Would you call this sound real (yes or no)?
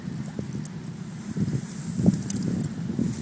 yes